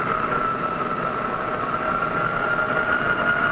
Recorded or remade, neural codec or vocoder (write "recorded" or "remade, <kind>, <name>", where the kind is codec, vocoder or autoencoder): recorded